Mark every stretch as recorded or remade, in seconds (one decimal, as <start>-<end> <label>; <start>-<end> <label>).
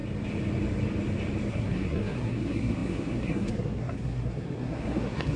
0.0-1.5 recorded; 1.5-5.4 remade